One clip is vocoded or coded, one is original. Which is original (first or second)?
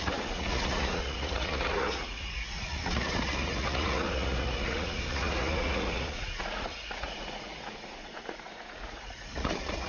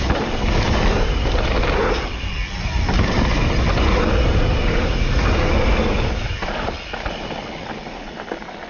second